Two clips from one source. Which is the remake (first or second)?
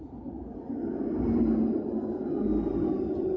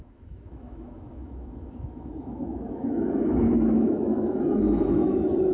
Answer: second